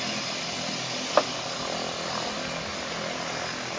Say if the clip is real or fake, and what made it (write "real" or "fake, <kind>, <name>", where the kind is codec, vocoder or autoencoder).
real